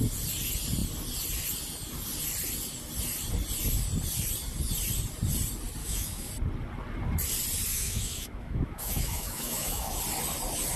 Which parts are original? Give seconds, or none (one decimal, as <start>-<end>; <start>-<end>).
0.0-5.8; 6.3-7.7; 10.0-10.8